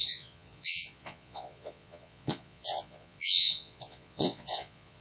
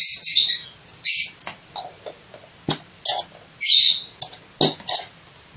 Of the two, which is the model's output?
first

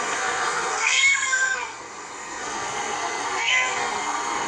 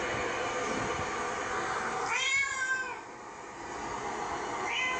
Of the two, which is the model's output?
first